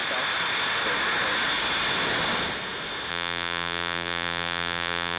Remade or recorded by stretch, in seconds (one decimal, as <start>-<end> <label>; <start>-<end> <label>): 0.0-3.1 recorded; 3.1-5.2 remade